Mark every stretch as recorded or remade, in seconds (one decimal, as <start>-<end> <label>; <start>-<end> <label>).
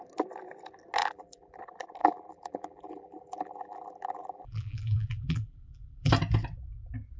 0.0-1.0 recorded; 1.0-1.6 remade; 1.6-2.0 recorded; 2.0-6.1 remade; 6.1-7.2 recorded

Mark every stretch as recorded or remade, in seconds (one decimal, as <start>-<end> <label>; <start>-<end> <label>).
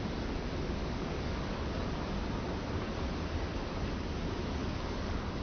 0.0-0.8 recorded; 0.8-1.9 remade; 1.9-4.6 recorded; 4.6-5.4 remade